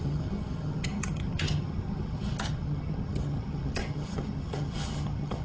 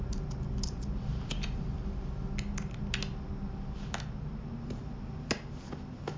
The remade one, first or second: first